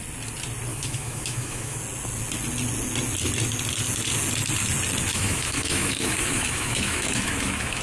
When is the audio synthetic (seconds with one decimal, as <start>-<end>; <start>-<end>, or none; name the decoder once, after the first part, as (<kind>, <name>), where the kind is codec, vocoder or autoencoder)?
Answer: 0.7-1.8 (autoencoder, DAC-VAE); 5.1-7.8